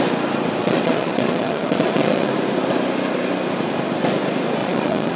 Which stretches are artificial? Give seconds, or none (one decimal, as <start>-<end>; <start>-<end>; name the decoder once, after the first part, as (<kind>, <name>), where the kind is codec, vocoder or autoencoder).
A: 0.6-2.3 (vocoder, Vocos); 4.6-5.2